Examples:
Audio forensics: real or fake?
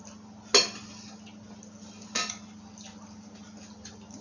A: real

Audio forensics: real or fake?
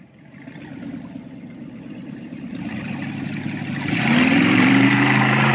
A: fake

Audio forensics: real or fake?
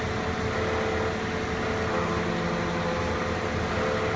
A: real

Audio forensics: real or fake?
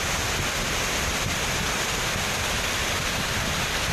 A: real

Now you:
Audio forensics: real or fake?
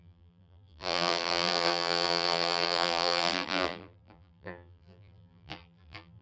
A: fake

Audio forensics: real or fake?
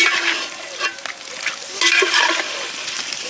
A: real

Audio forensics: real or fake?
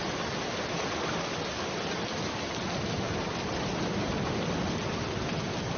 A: real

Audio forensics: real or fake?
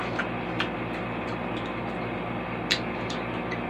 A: real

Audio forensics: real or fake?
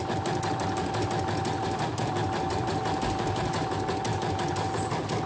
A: real